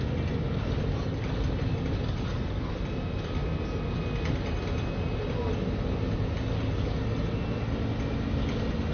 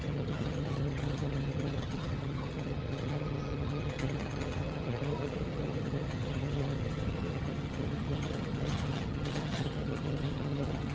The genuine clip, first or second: first